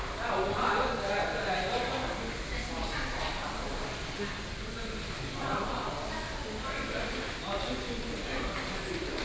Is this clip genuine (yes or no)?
yes